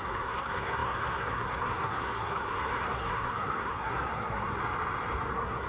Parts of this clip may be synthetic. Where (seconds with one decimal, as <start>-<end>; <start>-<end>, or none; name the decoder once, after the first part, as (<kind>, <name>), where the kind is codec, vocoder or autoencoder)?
0.0-4.6 (codec, SNAC); 5.3-5.7